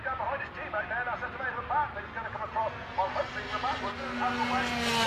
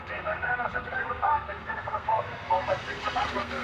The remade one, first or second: second